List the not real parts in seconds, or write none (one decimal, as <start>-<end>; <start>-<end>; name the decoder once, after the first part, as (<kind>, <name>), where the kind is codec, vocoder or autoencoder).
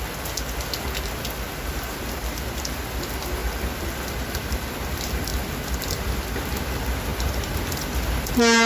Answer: none